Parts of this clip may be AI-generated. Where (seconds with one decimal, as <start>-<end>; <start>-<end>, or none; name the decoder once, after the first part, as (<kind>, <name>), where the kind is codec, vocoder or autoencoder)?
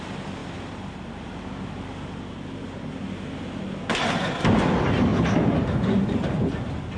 none